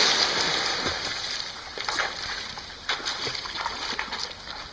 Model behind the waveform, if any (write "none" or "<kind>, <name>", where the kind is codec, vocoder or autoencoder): none